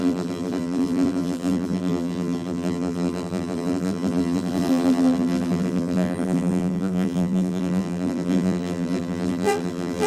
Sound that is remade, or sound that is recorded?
remade